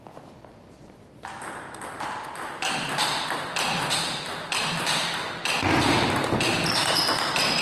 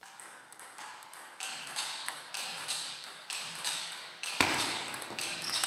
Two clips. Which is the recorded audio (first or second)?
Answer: first